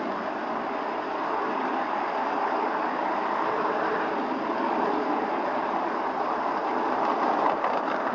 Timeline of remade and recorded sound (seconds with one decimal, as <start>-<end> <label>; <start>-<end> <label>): 0.0-8.1 recorded